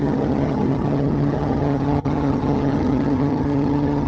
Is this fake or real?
fake